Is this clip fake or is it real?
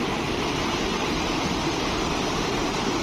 fake